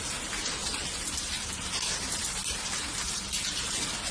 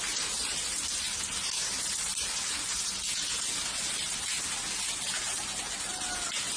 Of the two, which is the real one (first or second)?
second